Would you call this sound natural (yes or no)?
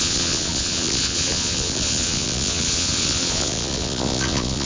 no